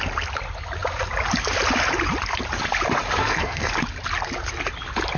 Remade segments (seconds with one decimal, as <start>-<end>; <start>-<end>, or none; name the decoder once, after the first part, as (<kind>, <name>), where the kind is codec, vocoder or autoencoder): 3.2-3.7 (codec, SNAC)